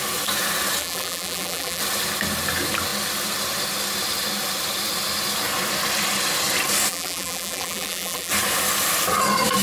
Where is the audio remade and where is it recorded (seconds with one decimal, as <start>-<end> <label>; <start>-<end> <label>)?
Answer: 0.0-0.8 recorded; 0.8-1.8 remade; 1.8-6.9 recorded; 6.9-8.3 remade; 8.3-9.6 recorded

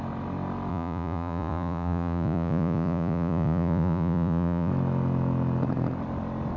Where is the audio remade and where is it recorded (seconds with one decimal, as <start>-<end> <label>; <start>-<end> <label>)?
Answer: 0.0-0.7 recorded; 0.7-4.7 remade; 4.7-6.6 recorded

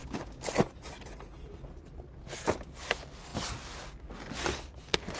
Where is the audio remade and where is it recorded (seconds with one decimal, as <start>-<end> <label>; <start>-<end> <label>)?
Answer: 0.0-0.6 remade; 0.6-5.2 recorded

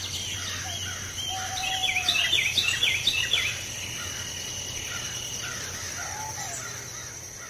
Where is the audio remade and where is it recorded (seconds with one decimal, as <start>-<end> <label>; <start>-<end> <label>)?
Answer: 0.0-7.5 recorded

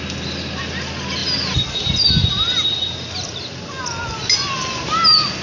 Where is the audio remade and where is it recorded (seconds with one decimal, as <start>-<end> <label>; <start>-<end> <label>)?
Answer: 0.0-5.4 recorded

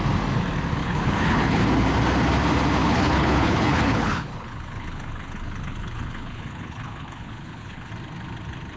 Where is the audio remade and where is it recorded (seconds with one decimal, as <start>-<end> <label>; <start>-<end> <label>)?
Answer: 0.0-0.8 recorded; 0.8-1.6 remade; 1.6-2.8 recorded; 2.8-7.9 remade; 7.9-8.8 recorded

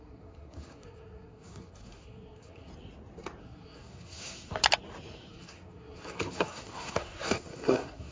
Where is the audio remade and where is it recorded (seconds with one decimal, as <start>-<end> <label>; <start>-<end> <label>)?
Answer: 0.0-2.7 remade; 2.7-3.4 recorded; 3.4-4.5 remade; 4.5-5.3 recorded; 5.3-8.1 remade